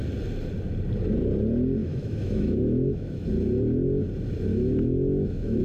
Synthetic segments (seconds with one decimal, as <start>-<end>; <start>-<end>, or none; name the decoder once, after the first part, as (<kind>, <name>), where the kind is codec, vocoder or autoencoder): 1.8-3.3 (autoencoder, DAC-VAE); 4.5-5.6